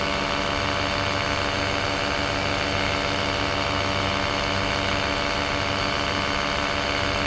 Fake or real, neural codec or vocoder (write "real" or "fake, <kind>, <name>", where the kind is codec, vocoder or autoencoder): real